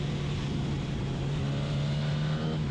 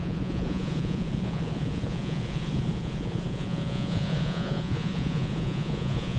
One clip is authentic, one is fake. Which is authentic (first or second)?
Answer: first